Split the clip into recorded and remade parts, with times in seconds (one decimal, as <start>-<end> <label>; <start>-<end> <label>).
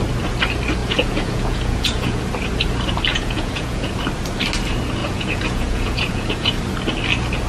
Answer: 0.0-0.8 recorded; 0.8-2.2 remade; 2.2-3.1 recorded; 3.1-3.9 remade; 3.9-5.0 recorded; 5.0-6.6 remade; 6.6-7.5 recorded